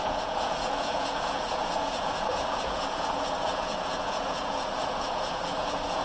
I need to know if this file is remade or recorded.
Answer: remade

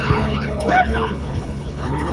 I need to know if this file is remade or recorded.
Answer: remade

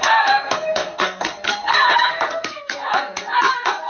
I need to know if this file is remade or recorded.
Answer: remade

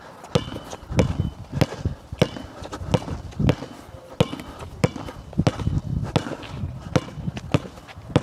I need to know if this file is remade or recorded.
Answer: recorded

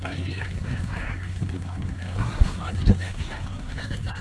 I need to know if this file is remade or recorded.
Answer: remade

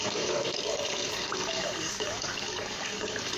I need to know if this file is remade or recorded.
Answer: remade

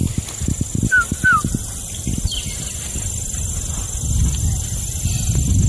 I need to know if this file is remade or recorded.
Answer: recorded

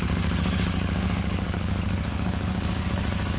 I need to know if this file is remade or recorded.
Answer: remade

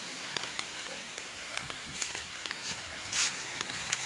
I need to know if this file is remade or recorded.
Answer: remade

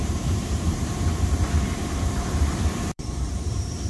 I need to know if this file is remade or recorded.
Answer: remade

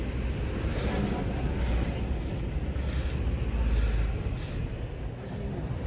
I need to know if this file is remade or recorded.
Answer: recorded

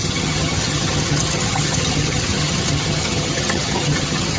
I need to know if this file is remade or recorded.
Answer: remade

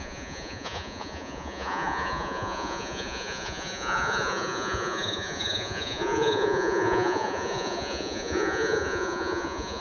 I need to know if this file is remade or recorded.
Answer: remade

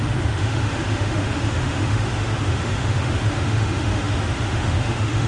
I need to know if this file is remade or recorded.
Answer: remade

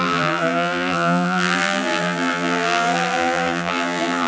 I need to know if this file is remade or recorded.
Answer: remade